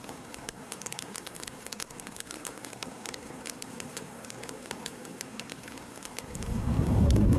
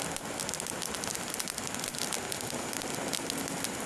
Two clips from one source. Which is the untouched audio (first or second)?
second